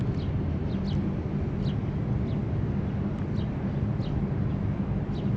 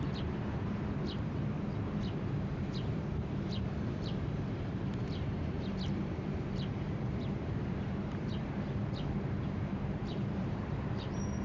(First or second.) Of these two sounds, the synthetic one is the second